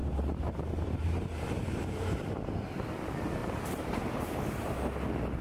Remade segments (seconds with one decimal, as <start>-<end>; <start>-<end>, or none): 0.0-2.4; 3.4-4.3